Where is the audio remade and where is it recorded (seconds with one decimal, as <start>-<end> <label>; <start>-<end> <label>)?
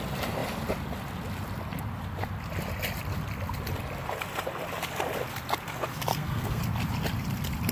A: 0.0-6.1 recorded; 6.1-6.6 remade; 6.6-7.7 recorded